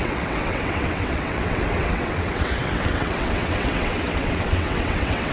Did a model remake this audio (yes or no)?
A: yes